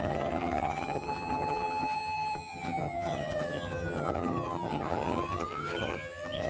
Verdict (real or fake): fake